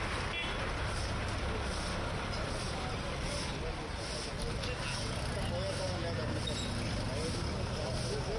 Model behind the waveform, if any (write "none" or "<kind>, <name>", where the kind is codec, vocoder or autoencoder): none